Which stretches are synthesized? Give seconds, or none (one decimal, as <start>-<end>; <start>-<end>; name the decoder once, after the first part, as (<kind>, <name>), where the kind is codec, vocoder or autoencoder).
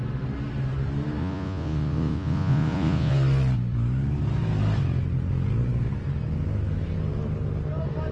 1.2-3.1 (vocoder, Vocos)